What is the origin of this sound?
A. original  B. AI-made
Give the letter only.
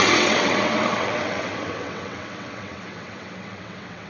B